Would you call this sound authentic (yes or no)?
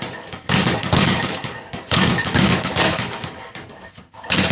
no